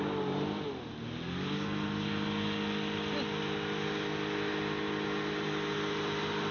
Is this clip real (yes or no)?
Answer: yes